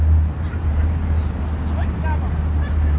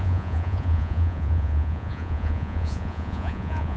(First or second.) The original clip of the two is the first